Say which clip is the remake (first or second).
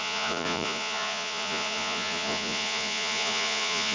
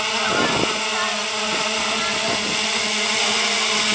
first